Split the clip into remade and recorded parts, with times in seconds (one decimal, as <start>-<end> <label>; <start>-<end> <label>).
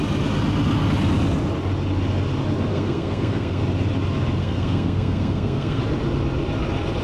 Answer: 0.0-2.7 recorded; 2.7-3.6 remade; 3.6-4.4 recorded; 4.4-5.8 remade; 5.8-7.0 recorded